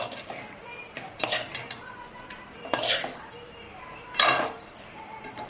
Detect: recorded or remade remade